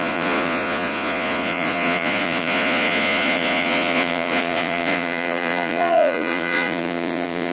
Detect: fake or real fake